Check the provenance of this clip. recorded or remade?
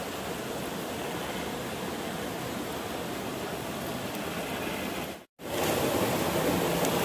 recorded